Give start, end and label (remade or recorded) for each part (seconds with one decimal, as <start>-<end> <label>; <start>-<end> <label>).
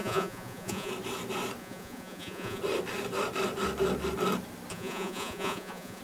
0.0-0.9 remade; 0.9-1.6 recorded; 1.6-2.6 remade; 2.6-4.7 recorded; 4.7-6.0 remade